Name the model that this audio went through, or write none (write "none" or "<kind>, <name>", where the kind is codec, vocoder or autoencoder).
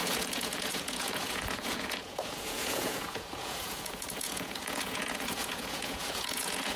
vocoder, Vocos